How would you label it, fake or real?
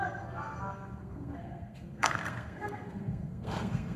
fake